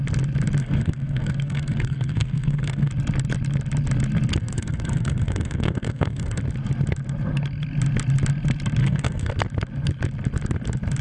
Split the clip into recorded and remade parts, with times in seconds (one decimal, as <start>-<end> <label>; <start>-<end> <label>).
0.0-0.6 recorded; 0.6-2.9 remade; 2.9-4.4 recorded; 4.4-6.4 remade; 6.4-8.8 recorded; 8.8-9.3 remade; 9.3-11.0 recorded